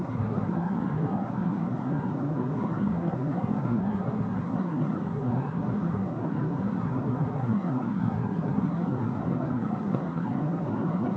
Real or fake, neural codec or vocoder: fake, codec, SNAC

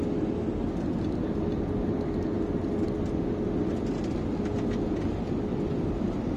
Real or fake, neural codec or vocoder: real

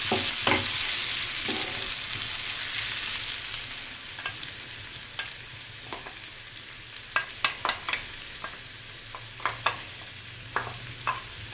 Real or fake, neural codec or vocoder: real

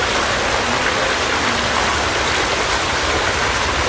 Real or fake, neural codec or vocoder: real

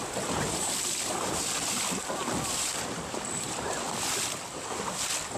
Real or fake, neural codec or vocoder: fake, vocoder, BigVGAN v2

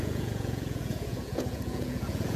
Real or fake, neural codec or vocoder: fake, vocoder, Vocos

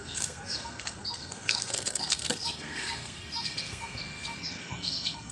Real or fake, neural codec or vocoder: fake, codec, SNAC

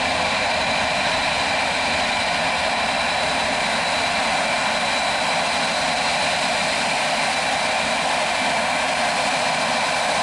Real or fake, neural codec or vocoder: real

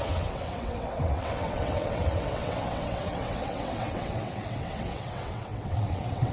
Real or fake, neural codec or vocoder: fake, vocoder, WaveNeXt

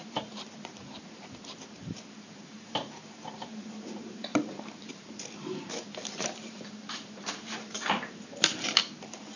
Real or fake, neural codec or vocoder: fake, vocoder, BigVGAN v2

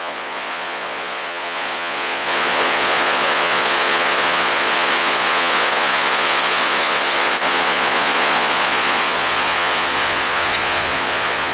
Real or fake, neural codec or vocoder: fake, vocoder, Vocos